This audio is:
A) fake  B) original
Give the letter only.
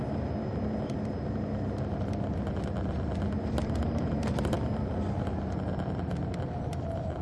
B